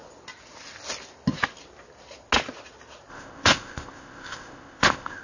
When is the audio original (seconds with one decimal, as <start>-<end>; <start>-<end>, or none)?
0.0-3.1